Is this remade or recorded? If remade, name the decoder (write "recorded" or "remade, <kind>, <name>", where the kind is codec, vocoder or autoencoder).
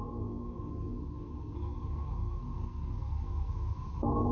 remade, codec, SNAC